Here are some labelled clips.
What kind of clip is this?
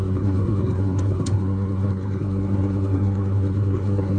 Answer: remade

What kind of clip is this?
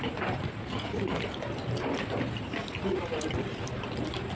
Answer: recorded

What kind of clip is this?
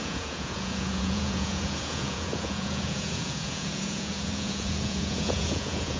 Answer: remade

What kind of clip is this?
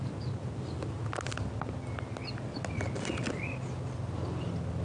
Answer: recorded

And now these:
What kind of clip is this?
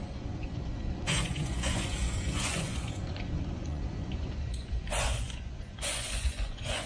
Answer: remade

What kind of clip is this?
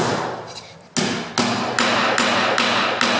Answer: recorded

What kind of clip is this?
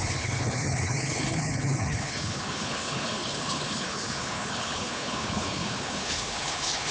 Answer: remade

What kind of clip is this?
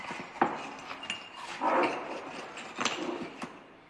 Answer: recorded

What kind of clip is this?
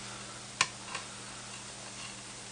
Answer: recorded